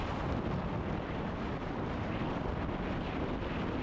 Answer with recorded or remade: recorded